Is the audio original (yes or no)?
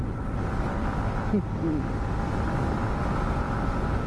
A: yes